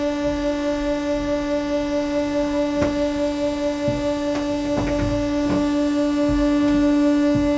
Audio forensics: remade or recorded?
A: recorded